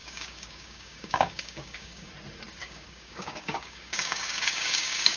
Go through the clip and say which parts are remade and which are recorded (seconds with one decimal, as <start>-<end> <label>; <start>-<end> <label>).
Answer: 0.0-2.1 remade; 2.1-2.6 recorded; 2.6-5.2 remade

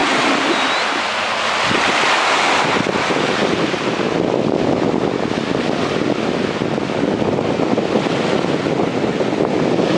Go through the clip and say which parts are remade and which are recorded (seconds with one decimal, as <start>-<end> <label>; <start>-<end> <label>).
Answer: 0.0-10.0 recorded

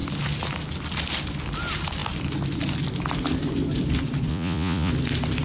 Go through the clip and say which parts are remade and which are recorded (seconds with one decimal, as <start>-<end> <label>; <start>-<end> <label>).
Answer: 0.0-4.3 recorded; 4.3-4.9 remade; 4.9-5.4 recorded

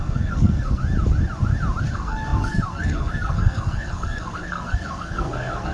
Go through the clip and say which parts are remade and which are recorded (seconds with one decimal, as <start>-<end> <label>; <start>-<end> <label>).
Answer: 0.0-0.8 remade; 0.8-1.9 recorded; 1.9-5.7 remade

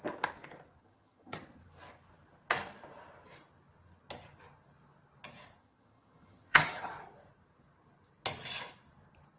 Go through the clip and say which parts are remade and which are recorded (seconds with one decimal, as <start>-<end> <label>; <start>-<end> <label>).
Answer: 0.0-0.8 recorded; 0.8-1.4 remade; 1.4-5.6 recorded; 5.6-6.9 remade; 6.9-9.4 recorded

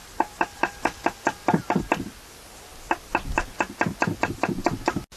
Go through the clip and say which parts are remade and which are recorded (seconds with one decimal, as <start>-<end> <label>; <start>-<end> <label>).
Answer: 0.0-5.2 recorded